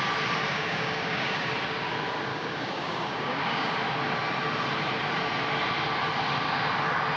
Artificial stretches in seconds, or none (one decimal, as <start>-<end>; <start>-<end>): 0.5-1.4; 2.3-3.7